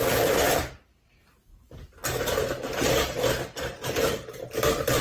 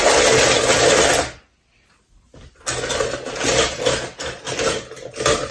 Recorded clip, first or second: second